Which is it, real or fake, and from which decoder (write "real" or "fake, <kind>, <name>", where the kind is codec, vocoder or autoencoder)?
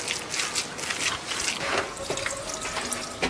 real